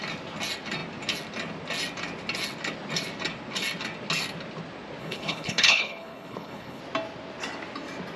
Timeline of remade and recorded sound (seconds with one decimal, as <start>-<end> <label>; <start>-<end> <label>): 0.0-5.0 recorded; 5.0-6.8 remade; 6.8-8.2 recorded